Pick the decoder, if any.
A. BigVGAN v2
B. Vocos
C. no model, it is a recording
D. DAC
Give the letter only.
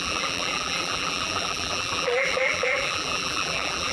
A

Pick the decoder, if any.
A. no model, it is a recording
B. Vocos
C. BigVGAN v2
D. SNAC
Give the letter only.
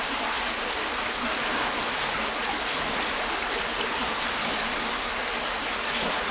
A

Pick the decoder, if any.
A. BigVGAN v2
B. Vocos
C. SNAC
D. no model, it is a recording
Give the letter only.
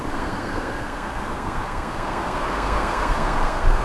C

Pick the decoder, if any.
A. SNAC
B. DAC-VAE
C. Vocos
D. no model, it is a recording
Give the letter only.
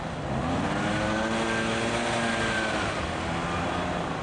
D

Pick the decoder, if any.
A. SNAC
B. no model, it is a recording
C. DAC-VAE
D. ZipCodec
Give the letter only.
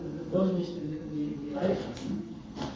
A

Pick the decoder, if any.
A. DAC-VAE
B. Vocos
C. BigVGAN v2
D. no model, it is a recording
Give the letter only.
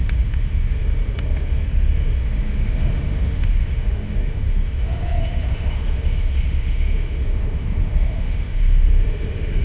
A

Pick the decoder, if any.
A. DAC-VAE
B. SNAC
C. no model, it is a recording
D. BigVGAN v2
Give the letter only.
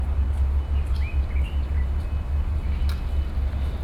C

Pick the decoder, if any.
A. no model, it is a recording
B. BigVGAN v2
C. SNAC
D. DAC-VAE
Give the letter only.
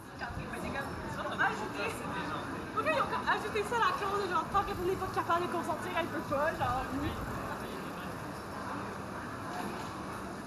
A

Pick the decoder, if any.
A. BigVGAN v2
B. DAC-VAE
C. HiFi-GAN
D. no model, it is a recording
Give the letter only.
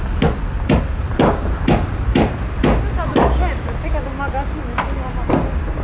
D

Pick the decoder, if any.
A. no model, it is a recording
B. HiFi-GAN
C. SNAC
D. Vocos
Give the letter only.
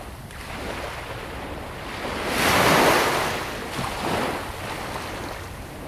A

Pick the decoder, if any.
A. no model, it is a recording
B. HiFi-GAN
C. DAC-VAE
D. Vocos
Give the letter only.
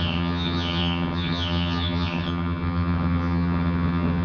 B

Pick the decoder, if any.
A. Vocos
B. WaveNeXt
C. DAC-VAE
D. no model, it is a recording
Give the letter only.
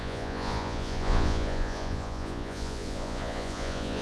A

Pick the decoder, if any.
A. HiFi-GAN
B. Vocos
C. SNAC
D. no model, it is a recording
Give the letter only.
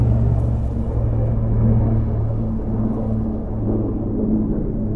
D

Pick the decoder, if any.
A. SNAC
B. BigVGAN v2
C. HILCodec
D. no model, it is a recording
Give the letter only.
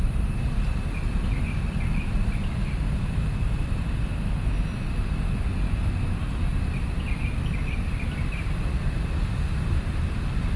D